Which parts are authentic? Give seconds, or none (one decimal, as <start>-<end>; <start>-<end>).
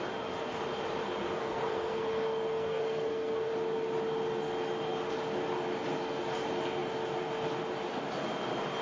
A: 0.0-1.4; 3.5-8.8